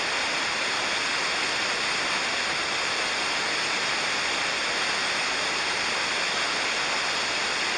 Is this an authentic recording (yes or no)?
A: yes